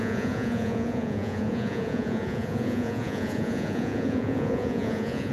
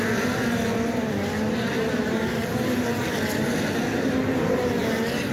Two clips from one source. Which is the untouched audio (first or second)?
second